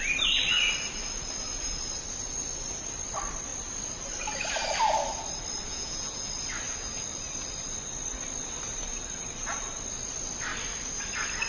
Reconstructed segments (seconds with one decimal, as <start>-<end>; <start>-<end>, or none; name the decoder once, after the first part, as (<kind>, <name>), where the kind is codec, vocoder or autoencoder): 5.7-6.3 (vocoder, Vocos)